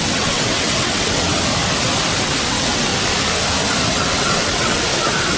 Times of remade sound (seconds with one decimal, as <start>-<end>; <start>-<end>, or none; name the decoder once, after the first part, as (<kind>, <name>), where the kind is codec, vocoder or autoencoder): 0.0-1.3 (vocoder, WaveNeXt); 2.5-2.9; 3.9-4.8